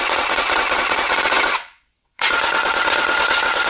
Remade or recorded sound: remade